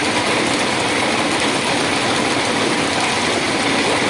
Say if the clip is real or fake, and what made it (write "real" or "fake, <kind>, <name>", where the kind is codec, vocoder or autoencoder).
real